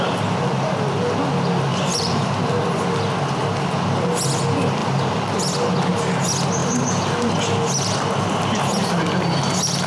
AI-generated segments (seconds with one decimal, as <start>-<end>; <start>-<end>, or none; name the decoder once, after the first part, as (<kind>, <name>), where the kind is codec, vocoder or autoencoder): 1.7-2.3 (vocoder, BigVGAN v2); 3.4-4.1; 4.8-5.4

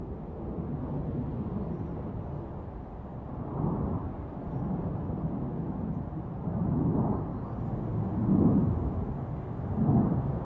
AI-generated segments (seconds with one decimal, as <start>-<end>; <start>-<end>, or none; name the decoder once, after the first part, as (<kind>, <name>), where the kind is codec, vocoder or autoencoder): 0.0-1.3 (vocoder, BigVGAN v2); 1.9-7.3; 10.0-10.4

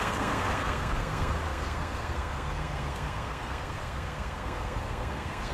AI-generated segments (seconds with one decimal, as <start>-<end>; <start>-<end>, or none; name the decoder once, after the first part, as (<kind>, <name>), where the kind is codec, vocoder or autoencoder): 0.0-5.5 (codec, SNAC)